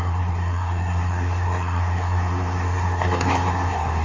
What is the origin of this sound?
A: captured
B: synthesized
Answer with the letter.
B